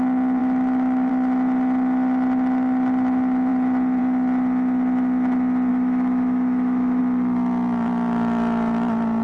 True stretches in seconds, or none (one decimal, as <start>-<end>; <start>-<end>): 0.0-0.4; 1.1-5.7; 7.0-9.2